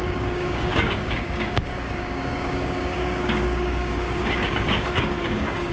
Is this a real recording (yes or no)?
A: no